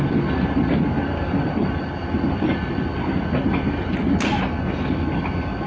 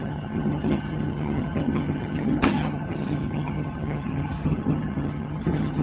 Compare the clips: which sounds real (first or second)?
first